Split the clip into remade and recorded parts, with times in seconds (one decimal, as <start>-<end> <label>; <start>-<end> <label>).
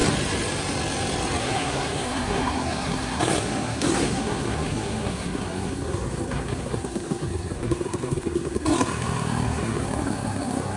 0.0-1.4 recorded; 1.4-10.8 remade